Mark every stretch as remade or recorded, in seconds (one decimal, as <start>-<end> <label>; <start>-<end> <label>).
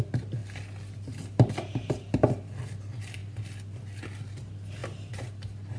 0.0-5.8 recorded